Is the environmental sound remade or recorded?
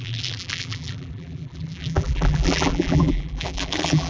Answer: remade